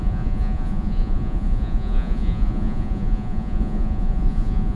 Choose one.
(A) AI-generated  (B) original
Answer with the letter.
A